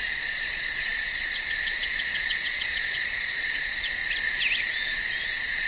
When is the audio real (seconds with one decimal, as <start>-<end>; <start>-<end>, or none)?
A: 4.0-4.6